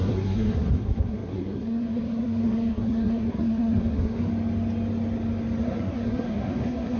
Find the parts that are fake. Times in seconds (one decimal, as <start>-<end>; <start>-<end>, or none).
0.0-4.3; 5.6-7.0